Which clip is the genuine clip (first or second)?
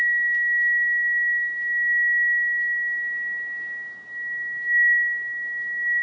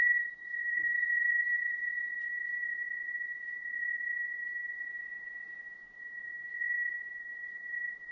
first